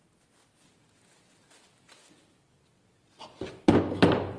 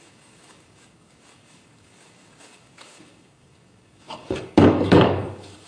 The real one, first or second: first